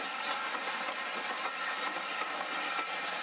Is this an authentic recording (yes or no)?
yes